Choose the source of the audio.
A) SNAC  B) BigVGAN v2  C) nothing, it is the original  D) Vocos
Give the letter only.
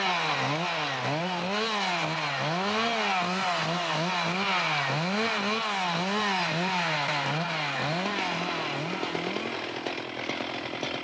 C